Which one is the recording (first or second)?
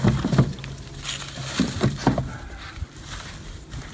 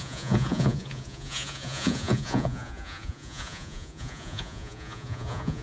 first